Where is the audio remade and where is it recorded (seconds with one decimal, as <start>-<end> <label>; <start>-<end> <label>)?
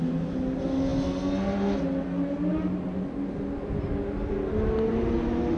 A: 0.0-5.6 recorded